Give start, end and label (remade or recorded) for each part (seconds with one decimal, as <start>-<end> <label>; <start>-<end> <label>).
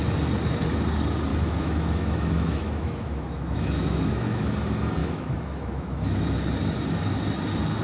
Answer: 0.0-1.3 recorded; 1.3-4.5 remade; 4.5-5.0 recorded; 5.0-6.4 remade; 6.4-7.8 recorded